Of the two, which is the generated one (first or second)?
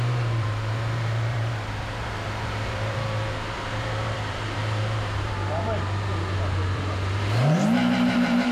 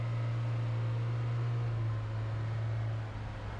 first